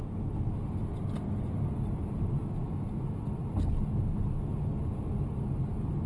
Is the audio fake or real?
real